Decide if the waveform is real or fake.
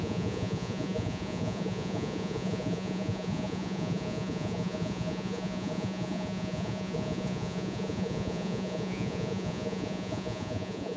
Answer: fake